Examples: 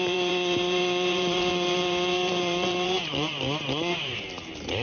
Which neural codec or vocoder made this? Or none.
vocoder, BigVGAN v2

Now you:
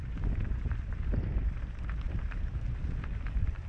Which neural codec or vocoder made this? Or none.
vocoder, BigVGAN v2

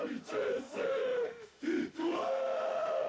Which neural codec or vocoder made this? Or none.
autoencoder, DAC-VAE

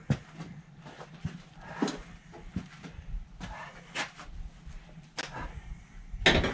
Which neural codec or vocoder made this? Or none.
none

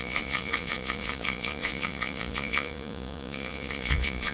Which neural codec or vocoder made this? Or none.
vocoder, Vocos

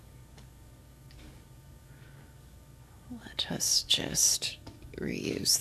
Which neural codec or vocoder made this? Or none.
codec, DAC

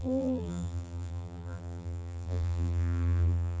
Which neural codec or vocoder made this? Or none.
vocoder, BigVGAN v2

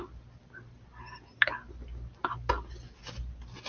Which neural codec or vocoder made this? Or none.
none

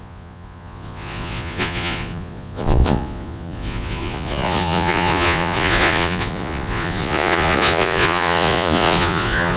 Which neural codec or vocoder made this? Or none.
vocoder, Vocos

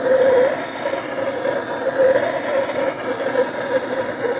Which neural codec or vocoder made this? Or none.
none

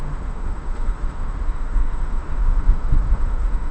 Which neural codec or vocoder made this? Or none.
autoencoder, DAC-VAE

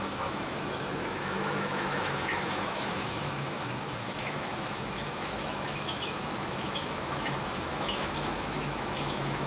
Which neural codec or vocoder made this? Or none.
autoencoder, DAC-VAE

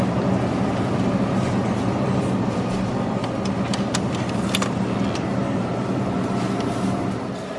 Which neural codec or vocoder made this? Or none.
none